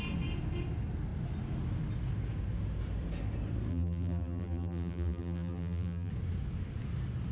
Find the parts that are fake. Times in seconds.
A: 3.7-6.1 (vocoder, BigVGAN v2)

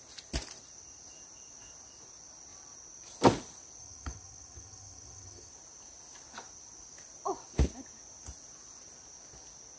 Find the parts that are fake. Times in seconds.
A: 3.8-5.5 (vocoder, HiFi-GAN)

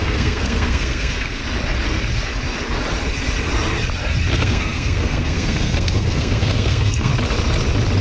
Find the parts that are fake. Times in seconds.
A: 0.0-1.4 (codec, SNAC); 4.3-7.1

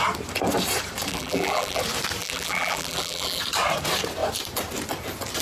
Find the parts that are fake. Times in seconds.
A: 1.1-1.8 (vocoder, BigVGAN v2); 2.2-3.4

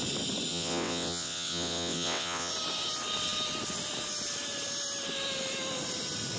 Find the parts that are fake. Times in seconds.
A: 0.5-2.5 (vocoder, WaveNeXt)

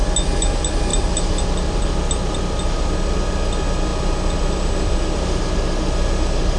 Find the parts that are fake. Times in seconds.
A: none

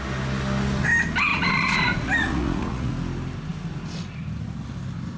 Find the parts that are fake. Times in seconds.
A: 1.3-2.9 (vocoder, Vocos)

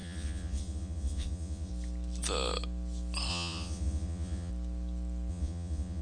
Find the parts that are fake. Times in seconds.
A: 0.0-1.7 (vocoder, Vocos); 3.3-4.5; 5.3-6.0